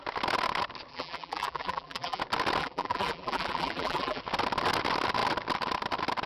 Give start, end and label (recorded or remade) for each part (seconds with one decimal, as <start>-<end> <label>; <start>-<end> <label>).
0.0-0.9 recorded; 0.9-2.2 remade; 2.2-2.6 recorded; 2.6-4.2 remade; 4.2-6.3 recorded